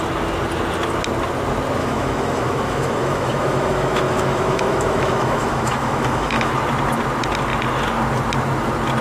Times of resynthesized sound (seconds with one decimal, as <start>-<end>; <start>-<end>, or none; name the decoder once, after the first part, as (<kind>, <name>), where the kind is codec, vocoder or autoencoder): 1.8-6.5 (autoencoder, DAC-VAE)